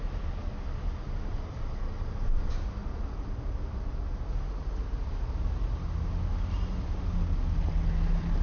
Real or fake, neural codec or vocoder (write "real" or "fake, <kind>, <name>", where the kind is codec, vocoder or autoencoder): real